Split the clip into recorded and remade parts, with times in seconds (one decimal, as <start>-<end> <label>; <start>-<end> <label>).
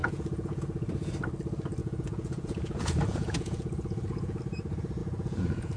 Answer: 0.0-0.6 remade; 0.6-1.8 recorded; 1.8-4.4 remade; 4.4-5.0 recorded; 5.0-5.8 remade